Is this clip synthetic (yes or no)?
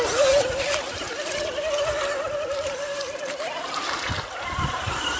no